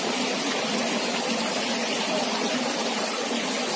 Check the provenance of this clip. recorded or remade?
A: recorded